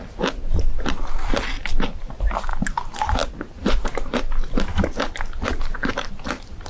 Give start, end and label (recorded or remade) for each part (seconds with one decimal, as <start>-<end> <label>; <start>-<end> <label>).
0.0-6.7 recorded